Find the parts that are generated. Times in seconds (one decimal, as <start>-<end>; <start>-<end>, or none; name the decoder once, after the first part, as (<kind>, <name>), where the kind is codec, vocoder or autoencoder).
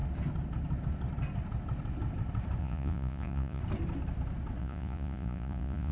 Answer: 2.6-3.6 (vocoder, Vocos); 4.6-5.9